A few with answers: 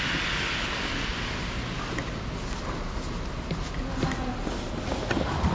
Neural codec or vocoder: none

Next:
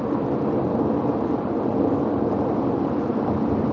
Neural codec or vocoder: none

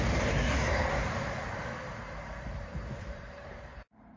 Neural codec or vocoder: vocoder, BigVGAN v2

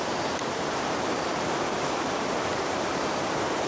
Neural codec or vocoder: vocoder, BigVGAN v2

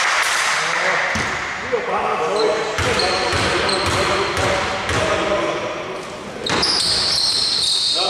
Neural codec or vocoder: none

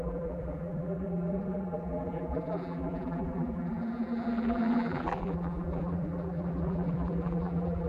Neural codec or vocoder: vocoder, BigVGAN v2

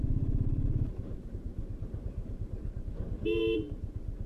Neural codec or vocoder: vocoder, BigVGAN v2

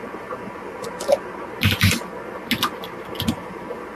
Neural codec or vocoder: none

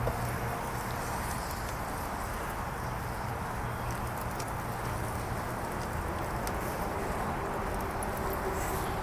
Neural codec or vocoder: none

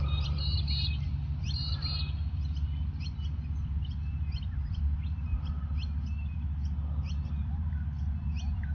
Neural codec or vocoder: vocoder, BigVGAN v2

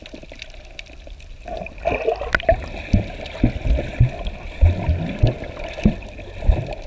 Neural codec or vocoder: none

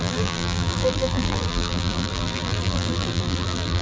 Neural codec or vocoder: vocoder, BigVGAN v2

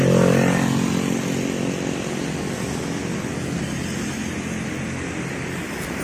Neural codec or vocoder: none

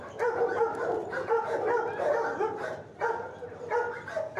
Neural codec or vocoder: none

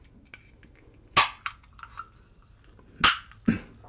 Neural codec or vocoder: none